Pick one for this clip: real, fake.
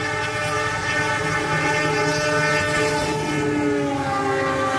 real